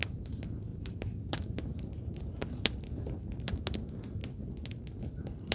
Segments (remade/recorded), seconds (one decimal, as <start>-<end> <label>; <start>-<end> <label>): 0.0-0.7 recorded; 0.7-3.6 remade; 3.6-5.5 recorded